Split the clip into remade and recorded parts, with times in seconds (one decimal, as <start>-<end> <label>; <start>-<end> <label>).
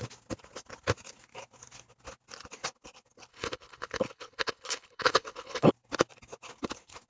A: 0.0-3.3 recorded; 3.3-5.7 remade; 5.7-7.1 recorded